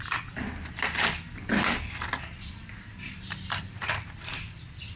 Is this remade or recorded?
remade